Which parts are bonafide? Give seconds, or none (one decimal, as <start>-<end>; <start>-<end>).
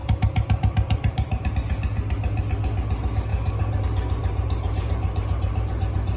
1.5-4.2; 5.7-6.2